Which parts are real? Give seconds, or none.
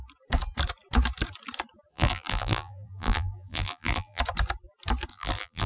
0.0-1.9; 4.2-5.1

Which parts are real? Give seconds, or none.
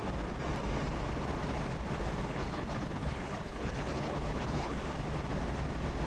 0.0-2.3; 4.8-6.1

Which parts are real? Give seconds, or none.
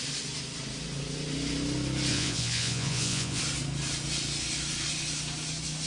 0.0-2.1; 3.4-5.9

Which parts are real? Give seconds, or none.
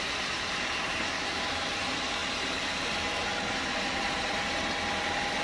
2.2-5.4